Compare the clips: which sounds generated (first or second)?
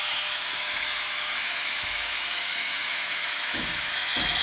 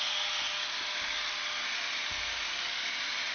first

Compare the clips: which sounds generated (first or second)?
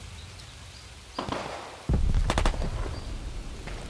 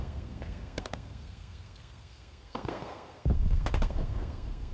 second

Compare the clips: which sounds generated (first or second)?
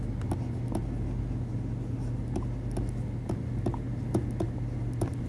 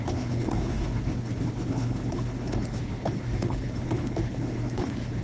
second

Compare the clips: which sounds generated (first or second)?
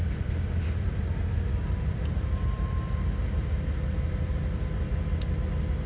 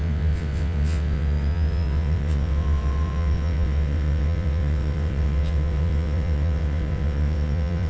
second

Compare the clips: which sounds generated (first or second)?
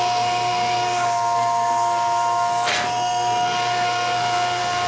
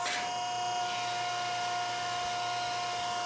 first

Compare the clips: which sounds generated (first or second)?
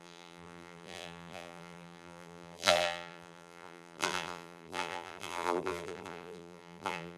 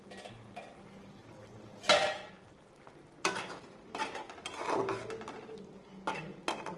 first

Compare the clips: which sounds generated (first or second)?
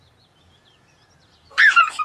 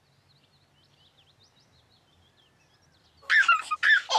first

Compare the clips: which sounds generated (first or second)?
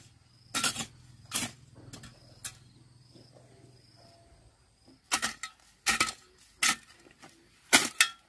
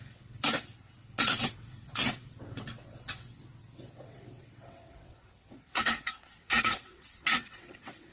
second